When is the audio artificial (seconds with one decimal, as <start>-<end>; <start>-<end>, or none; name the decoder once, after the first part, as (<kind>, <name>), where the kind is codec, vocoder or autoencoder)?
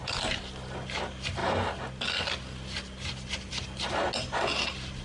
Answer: none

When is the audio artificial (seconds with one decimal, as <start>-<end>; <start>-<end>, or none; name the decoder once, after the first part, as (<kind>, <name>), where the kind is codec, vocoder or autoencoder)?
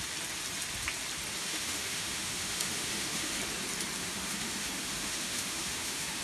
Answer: 1.4-3.4 (autoencoder, DAC-VAE); 4.0-6.2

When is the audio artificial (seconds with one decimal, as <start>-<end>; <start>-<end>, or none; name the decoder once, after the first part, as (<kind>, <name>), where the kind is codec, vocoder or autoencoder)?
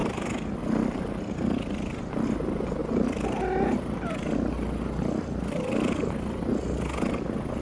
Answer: none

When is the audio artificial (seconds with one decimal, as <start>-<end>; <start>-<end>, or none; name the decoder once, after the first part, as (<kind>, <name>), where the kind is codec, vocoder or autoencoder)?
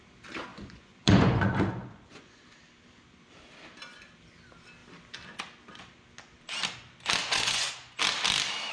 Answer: 0.5-2.4 (vocoder, Vocos); 7.2-8.0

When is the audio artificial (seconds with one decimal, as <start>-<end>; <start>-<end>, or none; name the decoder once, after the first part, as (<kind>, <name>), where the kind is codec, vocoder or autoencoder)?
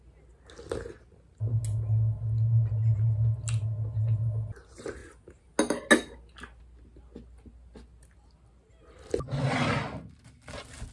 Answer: none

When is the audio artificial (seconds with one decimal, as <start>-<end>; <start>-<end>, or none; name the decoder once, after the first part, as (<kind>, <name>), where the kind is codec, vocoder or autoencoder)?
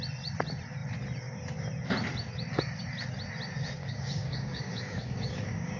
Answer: 3.8-5.8 (codec, DAC)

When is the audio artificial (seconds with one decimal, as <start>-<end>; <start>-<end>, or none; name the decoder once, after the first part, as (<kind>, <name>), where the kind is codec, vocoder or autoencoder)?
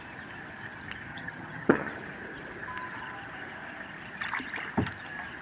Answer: 1.1-1.9 (vocoder, HiFi-GAN)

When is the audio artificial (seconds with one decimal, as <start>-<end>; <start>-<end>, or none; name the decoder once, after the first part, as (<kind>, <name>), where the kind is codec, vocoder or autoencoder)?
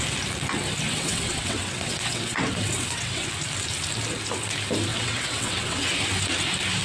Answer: 0.9-3.3 (vocoder, WaveNeXt); 4.9-5.9